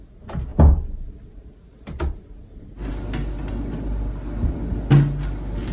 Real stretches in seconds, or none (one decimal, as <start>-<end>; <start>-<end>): 0.0-5.7